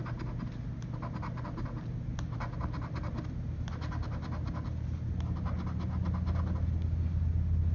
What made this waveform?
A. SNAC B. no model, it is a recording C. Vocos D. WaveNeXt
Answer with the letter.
B